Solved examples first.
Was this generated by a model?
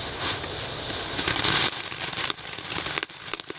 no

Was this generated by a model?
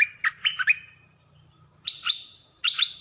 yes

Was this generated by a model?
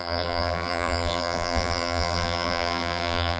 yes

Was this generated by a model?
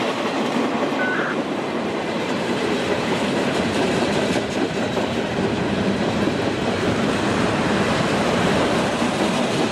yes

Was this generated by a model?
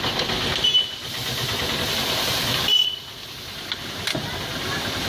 no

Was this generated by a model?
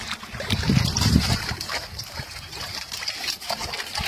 yes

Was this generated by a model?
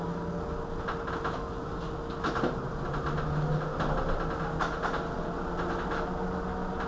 no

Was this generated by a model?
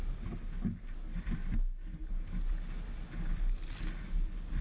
no